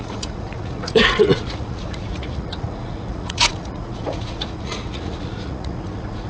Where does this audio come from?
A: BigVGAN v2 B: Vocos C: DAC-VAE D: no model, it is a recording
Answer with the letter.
B